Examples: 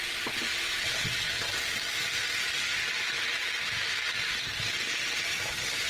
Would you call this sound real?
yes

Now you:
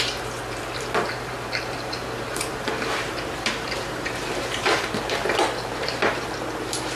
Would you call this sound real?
no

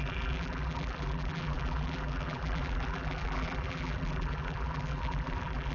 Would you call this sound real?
no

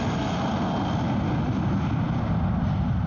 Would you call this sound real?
yes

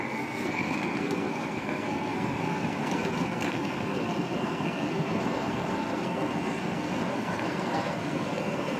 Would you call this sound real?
no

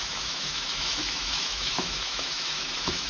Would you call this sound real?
no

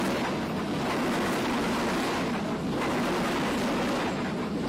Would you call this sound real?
yes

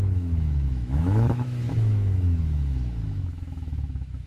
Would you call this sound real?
no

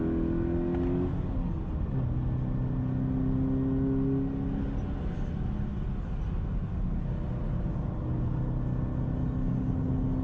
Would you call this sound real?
yes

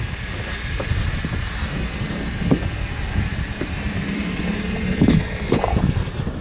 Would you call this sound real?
yes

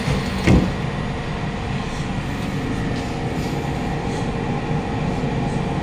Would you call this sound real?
yes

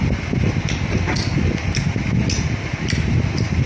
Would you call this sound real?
yes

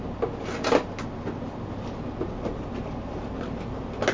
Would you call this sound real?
yes